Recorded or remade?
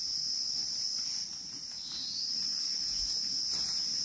recorded